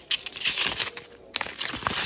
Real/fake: real